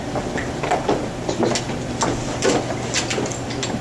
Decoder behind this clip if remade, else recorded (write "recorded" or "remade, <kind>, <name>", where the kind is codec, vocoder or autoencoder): recorded